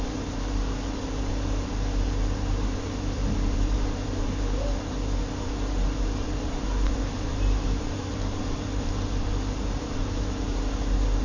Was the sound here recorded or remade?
remade